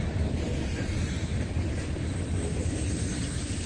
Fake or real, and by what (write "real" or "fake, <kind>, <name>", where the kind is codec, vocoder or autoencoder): real